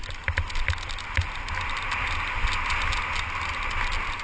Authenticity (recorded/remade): recorded